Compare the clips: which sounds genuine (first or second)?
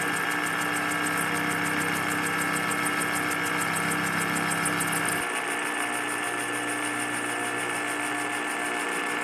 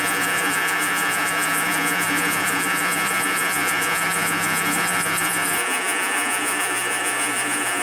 first